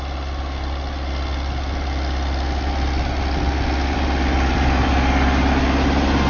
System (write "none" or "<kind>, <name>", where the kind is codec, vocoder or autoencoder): none